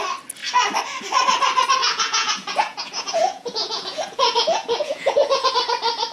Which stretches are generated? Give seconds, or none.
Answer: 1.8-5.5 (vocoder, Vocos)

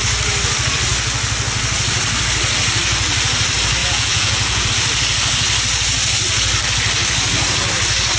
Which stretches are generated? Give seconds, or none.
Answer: 3.8-4.7 (vocoder, Vocos)

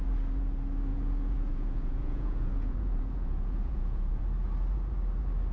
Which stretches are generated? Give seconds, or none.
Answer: 0.9-4.2 (vocoder, Vocos)

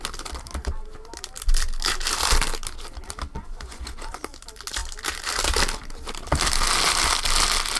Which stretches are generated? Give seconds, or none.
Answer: 3.4-4.2 (vocoder, Vocos)

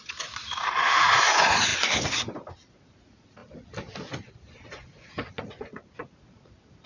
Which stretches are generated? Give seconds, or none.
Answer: 0.0-1.7 (vocoder, Vocos); 2.7-3.4; 4.8-6.9

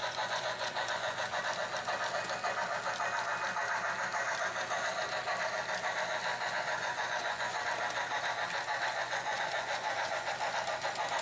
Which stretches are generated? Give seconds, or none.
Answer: 0.0-1.4 (vocoder, Vocos); 6.3-7.6; 8.9-10.3